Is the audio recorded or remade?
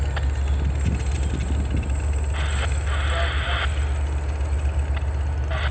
recorded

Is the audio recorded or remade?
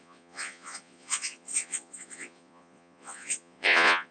remade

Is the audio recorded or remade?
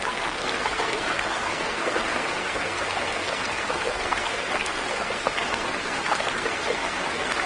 remade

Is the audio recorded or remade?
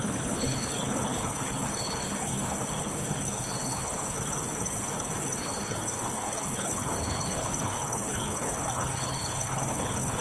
remade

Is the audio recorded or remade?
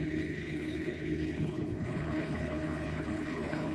remade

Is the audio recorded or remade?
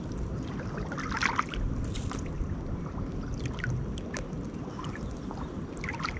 recorded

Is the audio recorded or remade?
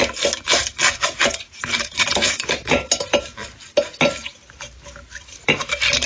recorded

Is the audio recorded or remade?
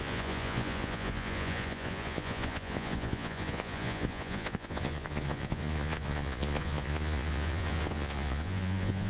remade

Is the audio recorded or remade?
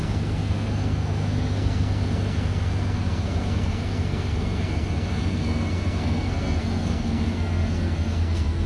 remade